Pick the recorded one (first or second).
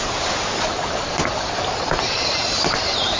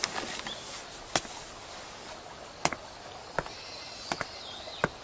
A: second